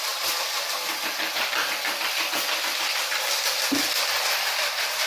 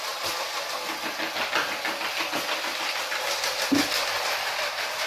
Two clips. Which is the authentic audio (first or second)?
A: second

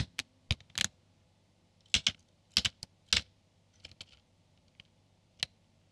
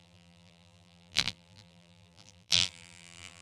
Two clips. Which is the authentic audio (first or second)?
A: first